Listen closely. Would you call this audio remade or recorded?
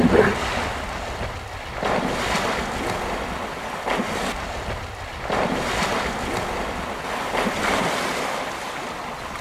recorded